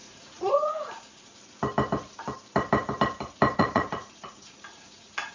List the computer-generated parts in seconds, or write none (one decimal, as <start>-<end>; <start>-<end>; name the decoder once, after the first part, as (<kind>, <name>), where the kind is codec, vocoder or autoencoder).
0.0-1.3 (vocoder, Vocos); 3.6-5.3